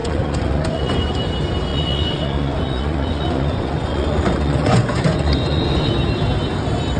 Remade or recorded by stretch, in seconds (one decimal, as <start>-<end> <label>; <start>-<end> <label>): 0.0-1.2 remade; 1.2-1.7 recorded; 1.7-5.9 remade; 5.9-7.0 recorded